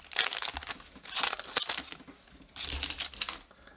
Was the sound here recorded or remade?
recorded